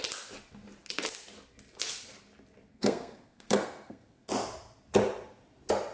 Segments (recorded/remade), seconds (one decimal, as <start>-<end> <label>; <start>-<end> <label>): 0.0-2.7 recorded; 2.7-4.3 remade; 4.3-5.9 recorded